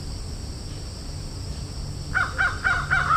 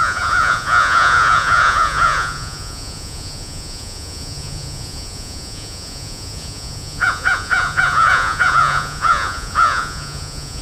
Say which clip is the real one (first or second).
first